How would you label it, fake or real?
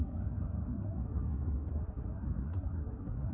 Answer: fake